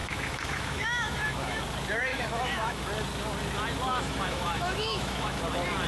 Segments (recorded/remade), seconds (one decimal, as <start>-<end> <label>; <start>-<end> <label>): 0.0-1.6 remade; 1.6-2.1 recorded; 2.1-2.8 remade; 2.8-3.9 recorded; 3.9-5.4 remade; 5.4-5.9 recorded